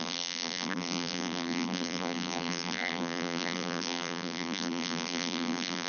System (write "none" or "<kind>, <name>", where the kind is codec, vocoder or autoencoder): vocoder, BigVGAN v2